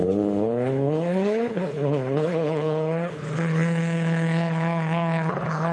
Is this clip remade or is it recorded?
remade